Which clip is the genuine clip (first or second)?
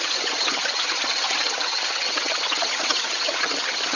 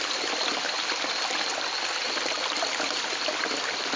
second